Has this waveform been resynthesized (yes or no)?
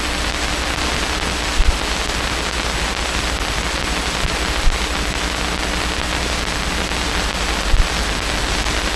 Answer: yes